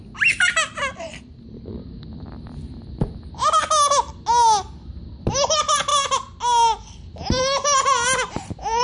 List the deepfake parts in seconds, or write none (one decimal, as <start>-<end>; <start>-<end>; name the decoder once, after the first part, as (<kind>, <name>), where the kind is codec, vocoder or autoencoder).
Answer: 0.9-1.7 (vocoder, BigVGAN v2)